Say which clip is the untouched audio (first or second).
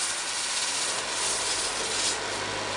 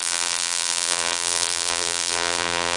first